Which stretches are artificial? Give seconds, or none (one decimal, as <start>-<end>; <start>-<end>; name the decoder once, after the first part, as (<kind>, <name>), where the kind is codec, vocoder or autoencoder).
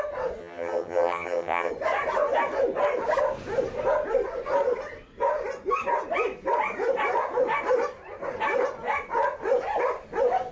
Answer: 0.4-1.7 (vocoder, HiFi-GAN)